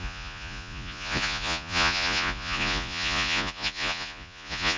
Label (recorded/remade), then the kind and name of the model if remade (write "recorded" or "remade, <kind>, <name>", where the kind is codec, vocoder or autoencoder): remade, vocoder, Vocos